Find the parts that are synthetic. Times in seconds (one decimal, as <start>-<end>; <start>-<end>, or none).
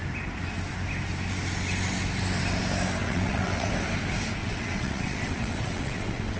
3.0-3.7; 4.4-6.4